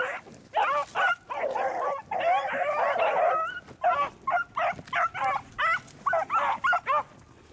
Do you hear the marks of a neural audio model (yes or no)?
no